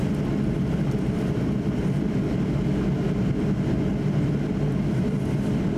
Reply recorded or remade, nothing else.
recorded